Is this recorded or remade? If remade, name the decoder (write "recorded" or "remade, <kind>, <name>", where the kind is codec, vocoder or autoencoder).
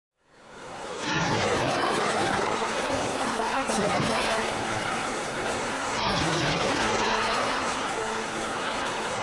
remade, codec, SNAC